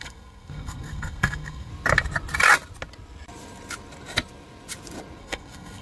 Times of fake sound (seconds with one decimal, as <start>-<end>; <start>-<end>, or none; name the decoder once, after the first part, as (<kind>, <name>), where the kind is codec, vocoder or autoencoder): 0.0-1.7 (codec, SNAC); 5.2-5.8